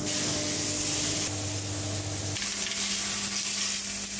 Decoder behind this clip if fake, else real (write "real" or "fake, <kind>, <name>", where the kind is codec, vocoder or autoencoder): real